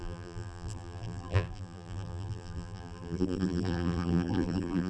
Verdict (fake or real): fake